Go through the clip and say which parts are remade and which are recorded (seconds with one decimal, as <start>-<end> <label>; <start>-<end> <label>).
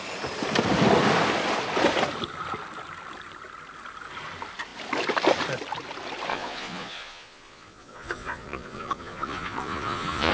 0.0-6.3 recorded; 6.3-10.3 remade